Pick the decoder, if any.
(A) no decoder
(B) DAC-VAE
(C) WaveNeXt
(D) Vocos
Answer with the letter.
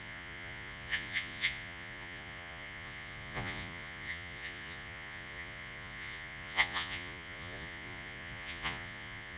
D